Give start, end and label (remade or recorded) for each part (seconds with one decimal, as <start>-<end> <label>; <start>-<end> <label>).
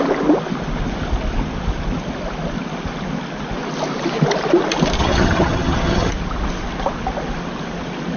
0.0-5.0 recorded; 5.0-6.1 remade; 6.1-8.2 recorded